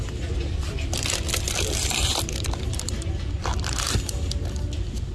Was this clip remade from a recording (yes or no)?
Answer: no